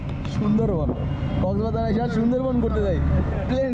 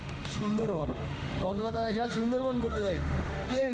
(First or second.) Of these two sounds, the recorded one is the first